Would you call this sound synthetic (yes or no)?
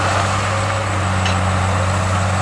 no